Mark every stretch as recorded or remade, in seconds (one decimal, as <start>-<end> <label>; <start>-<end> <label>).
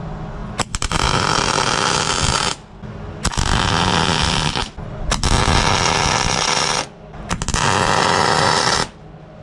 0.0-9.4 recorded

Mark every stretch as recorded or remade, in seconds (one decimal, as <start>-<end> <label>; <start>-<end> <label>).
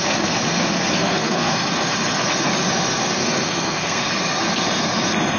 0.0-1.0 recorded; 1.0-1.5 remade; 1.5-3.2 recorded; 3.2-4.1 remade; 4.1-5.4 recorded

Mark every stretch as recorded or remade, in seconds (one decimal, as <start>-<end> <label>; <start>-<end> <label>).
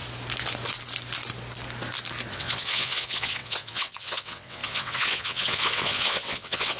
0.0-2.3 recorded; 2.3-6.8 remade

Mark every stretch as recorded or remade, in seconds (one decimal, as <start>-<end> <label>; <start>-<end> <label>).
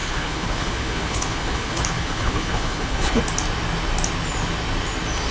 0.0-3.2 remade; 3.2-5.3 recorded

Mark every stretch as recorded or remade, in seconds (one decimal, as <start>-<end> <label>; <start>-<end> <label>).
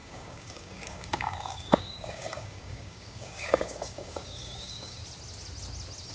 0.0-5.0 remade; 5.0-6.1 recorded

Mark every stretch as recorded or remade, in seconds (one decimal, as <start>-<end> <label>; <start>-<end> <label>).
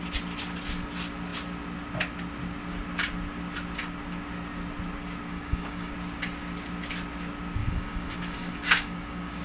0.0-5.3 recorded; 5.3-5.9 remade; 5.9-7.6 recorded; 7.6-9.4 remade